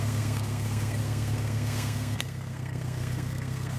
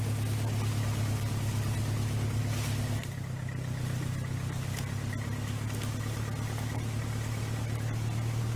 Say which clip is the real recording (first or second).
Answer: second